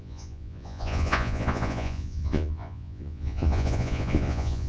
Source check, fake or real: fake